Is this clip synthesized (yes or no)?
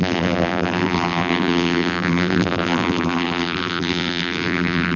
yes